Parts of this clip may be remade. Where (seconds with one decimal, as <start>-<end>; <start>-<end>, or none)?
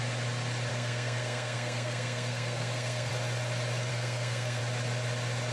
0.7-3.1; 3.9-4.6